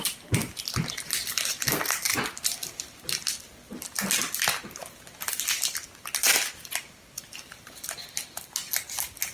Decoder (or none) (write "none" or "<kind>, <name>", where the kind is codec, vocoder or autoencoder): none